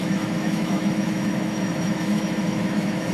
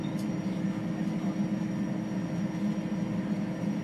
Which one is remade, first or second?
first